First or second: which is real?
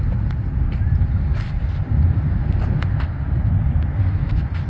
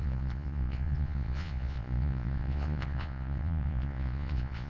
first